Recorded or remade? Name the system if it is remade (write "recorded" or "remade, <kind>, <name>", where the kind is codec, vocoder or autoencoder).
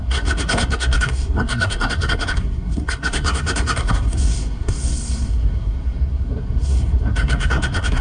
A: remade, codec, SNAC